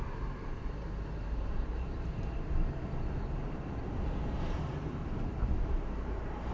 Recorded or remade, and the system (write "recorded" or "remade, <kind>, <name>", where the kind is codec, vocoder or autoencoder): remade, vocoder, BigVGAN v2